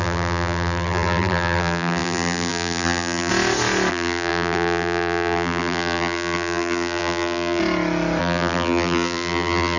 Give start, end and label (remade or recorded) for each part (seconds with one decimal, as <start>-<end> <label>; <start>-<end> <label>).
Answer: 0.0-3.3 remade; 3.3-3.9 recorded; 3.9-7.6 remade; 7.6-8.2 recorded; 8.2-9.8 remade